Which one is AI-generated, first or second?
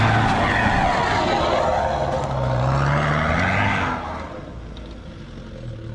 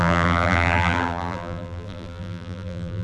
second